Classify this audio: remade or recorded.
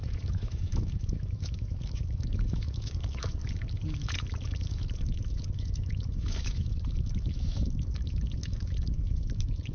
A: remade